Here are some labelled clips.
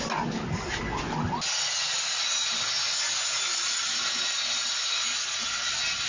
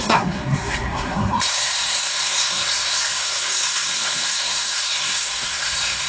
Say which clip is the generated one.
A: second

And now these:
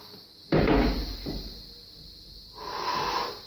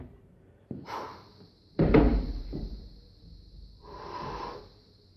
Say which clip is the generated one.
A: second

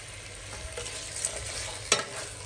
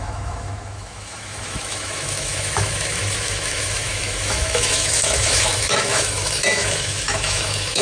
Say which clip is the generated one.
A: second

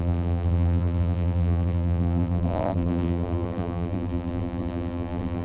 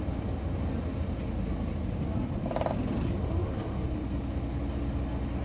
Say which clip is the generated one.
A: first